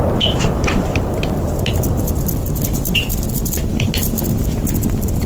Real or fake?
real